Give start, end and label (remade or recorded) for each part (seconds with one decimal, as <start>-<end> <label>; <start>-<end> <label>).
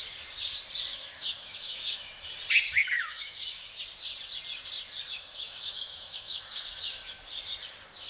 0.0-0.9 recorded; 0.9-2.3 remade; 2.3-2.8 recorded; 2.8-3.8 remade; 3.8-5.1 recorded; 5.1-7.2 remade; 7.2-8.1 recorded